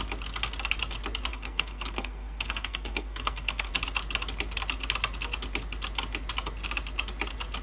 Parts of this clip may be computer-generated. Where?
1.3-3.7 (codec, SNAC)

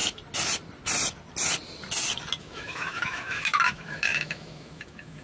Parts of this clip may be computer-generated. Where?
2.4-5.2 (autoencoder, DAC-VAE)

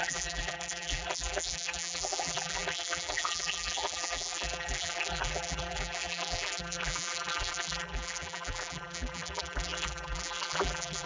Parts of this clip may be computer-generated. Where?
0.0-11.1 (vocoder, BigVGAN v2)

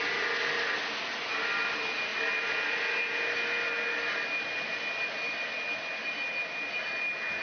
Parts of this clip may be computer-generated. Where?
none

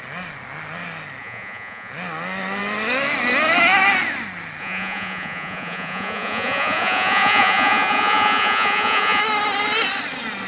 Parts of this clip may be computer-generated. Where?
1.2-1.9 (vocoder, Vocos); 4.6-9.2